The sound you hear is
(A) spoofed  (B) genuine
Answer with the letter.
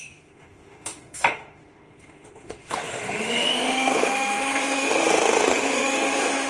A